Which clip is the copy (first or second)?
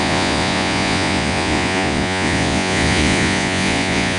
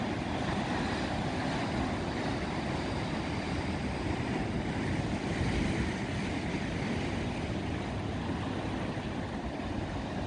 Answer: first